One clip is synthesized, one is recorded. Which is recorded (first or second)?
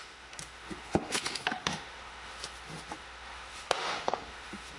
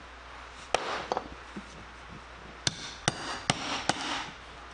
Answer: second